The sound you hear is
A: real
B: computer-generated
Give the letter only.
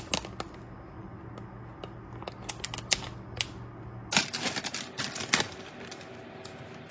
A